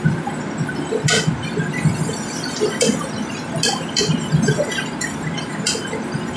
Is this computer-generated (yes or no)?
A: no